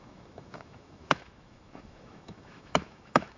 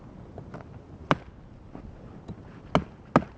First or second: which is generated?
first